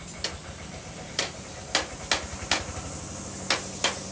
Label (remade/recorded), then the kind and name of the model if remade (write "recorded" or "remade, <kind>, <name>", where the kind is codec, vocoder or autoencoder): recorded